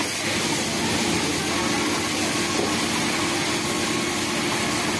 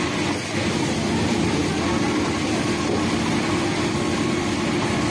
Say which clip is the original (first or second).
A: first